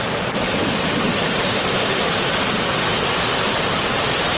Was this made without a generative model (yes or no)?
yes